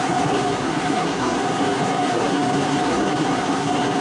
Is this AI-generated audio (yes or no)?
yes